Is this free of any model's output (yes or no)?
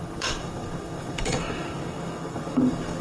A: no